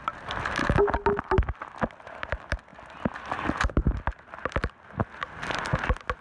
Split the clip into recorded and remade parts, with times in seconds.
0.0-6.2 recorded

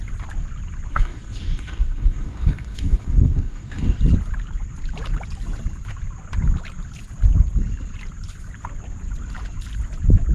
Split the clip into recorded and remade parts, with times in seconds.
0.0-0.9 recorded; 0.9-4.0 remade; 4.0-10.3 recorded

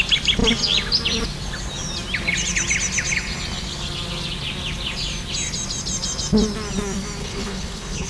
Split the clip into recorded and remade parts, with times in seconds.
0.0-7.2 recorded; 7.2-8.1 remade

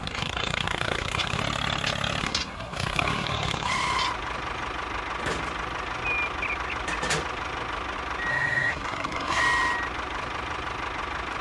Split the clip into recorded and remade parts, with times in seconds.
0.0-1.4 remade; 1.4-2.2 recorded; 2.2-3.7 remade; 3.7-8.3 recorded; 8.3-9.4 remade; 9.4-11.4 recorded